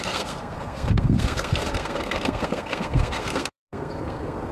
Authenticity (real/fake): fake